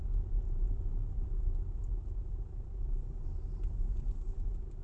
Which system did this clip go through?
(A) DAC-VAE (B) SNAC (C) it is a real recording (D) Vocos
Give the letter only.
C